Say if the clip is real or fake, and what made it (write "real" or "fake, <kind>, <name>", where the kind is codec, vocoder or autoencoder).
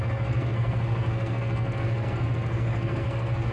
fake, codec, SNAC